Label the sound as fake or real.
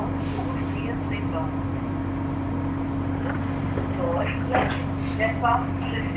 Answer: real